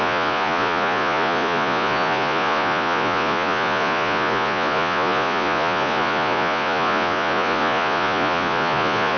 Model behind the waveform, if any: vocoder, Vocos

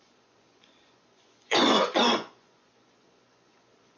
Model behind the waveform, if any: vocoder, Vocos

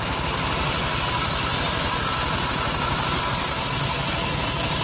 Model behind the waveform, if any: none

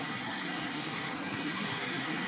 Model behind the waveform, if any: codec, SNAC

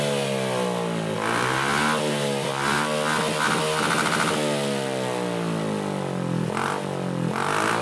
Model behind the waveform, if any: none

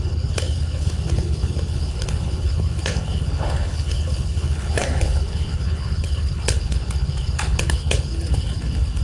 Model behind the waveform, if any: codec, HILCodec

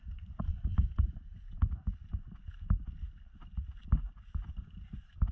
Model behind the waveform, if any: none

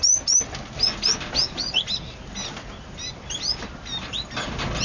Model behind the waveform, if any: none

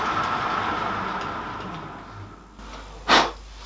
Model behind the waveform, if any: none